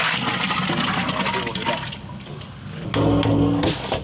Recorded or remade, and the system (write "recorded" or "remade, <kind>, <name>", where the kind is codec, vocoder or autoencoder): recorded